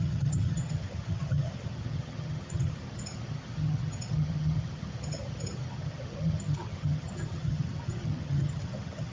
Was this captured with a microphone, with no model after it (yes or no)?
no